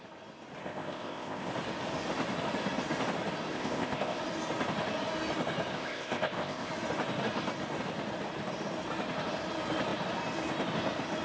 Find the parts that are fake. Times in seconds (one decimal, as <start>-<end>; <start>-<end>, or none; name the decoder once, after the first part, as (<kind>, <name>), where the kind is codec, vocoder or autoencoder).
0.6-1.5 (codec, ZipCodec); 3.5-4.2; 5.7-6.7

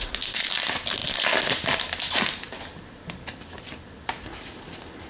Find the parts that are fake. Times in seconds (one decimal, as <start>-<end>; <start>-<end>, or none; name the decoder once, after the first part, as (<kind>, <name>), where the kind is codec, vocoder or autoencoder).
none

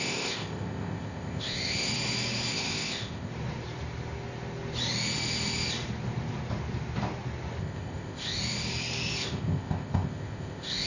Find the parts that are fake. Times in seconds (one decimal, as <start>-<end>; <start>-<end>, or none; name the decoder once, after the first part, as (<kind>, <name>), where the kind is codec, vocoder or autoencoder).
0.0-1.9 (codec, ZipCodec); 2.5-3.3; 7.6-8.4; 9.2-10.9

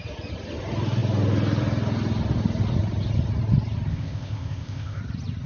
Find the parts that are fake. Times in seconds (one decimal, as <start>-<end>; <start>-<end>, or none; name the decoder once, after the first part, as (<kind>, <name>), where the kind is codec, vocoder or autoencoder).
3.9-5.0 (codec, ZipCodec)